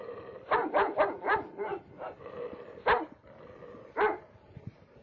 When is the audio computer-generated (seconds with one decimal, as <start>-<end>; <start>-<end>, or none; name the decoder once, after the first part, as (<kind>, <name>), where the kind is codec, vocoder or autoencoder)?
none